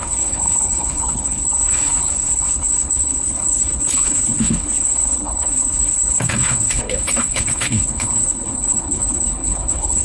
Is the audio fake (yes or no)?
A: yes